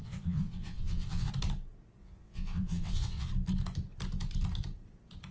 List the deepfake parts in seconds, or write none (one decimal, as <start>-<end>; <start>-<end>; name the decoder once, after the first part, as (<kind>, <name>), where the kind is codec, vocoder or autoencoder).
0.0-1.3 (vocoder, WaveNeXt); 2.0-3.3

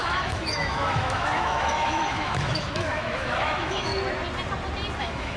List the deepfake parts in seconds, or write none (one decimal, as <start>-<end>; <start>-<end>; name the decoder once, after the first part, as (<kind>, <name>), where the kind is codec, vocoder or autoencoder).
0.0-3.9 (autoencoder, DAC-VAE); 5.0-5.4

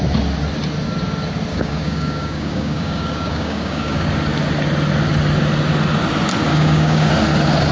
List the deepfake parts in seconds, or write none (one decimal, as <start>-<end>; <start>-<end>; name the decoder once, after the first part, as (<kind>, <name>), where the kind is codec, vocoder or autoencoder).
1.5-4.1 (codec, DAC); 6.5-7.1

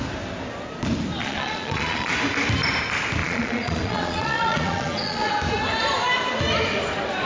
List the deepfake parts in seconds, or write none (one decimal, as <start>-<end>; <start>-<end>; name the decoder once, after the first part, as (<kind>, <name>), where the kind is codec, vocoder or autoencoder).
1.2-2.1 (vocoder, Vocos); 3.2-5.3

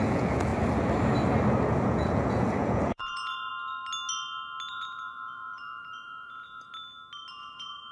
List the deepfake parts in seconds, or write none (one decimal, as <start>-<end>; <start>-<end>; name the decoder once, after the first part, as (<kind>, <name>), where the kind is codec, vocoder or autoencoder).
0.0-0.5 (vocoder, Vocos); 1.8-3.5; 4.7-6.7; 7.3-7.9